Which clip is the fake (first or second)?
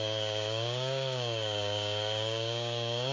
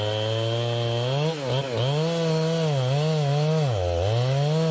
first